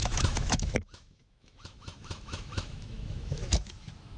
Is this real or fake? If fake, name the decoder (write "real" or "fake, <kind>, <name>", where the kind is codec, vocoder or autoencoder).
fake, autoencoder, DAC-VAE